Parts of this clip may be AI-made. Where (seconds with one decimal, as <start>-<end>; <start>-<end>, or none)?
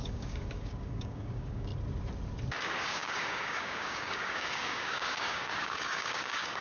0.0-1.7; 2.6-6.6